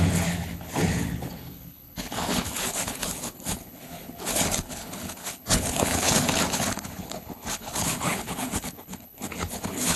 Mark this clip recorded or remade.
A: remade